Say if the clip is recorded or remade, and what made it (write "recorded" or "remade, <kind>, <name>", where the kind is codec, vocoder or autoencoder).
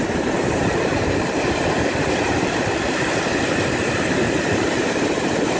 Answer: remade, vocoder, BigVGAN v2